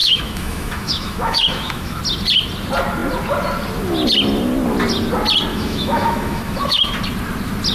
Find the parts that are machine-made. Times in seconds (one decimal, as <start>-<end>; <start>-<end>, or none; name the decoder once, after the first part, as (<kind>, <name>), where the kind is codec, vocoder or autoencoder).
0.0-2.0 (autoencoder, DAC-VAE); 5.5-6.9